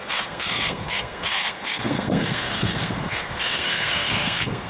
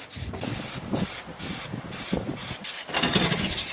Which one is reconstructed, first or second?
first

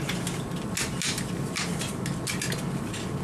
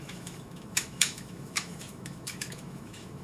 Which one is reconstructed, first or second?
second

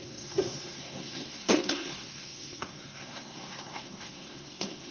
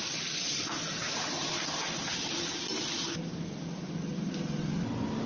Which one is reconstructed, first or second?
first